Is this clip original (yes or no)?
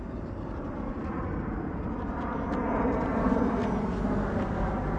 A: yes